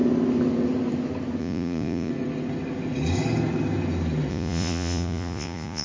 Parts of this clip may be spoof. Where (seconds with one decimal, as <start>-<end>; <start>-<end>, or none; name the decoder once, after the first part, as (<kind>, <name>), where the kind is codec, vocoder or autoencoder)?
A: 1.4-2.1 (vocoder, Vocos); 4.3-5.8